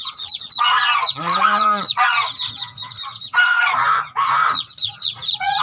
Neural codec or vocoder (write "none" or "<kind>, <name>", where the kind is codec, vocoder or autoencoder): vocoder, Vocos